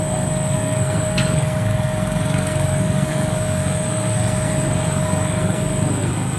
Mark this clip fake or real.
fake